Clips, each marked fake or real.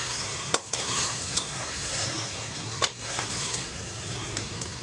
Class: fake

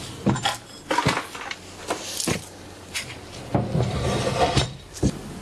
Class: real